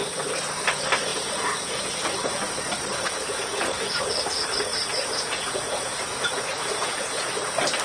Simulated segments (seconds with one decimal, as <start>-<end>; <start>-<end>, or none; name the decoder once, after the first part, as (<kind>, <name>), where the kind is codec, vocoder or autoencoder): 1.1-1.9 (vocoder, Vocos); 2.9-4.0; 4.7-7.3